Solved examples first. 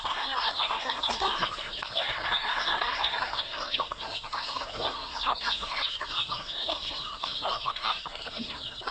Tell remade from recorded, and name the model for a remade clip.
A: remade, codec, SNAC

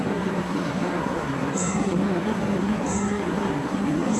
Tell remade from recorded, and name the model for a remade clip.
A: remade, codec, SNAC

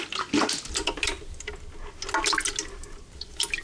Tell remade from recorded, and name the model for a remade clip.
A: recorded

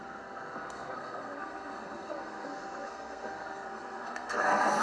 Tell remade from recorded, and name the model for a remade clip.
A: remade, codec, SNAC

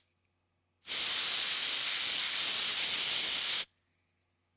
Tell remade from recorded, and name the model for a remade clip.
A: recorded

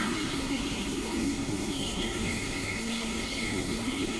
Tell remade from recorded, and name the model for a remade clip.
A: remade, codec, SNAC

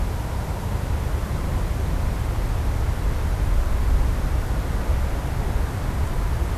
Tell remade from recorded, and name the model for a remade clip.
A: recorded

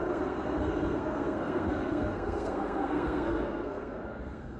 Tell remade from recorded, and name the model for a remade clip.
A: remade, codec, SNAC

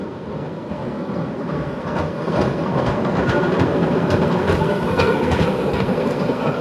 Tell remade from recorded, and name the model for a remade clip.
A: remade, codec, SNAC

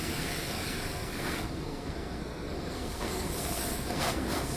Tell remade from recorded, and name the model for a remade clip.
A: remade, codec, SNAC